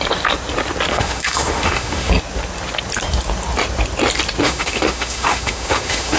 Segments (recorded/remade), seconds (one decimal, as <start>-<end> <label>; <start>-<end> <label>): 0.0-0.9 recorded; 0.9-2.1 remade; 2.1-4.4 recorded; 4.4-6.2 remade